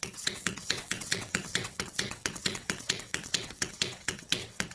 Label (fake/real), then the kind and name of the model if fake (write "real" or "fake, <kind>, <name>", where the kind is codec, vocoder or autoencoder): fake, vocoder, WaveNeXt